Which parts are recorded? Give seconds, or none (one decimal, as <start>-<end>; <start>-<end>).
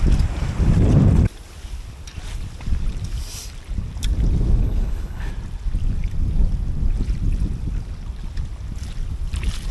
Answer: 0.0-4.6; 5.3-9.7